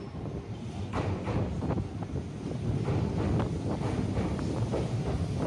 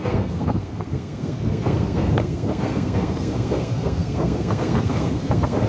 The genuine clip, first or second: first